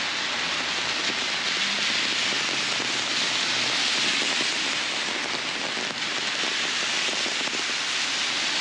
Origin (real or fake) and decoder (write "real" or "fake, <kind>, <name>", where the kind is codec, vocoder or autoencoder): real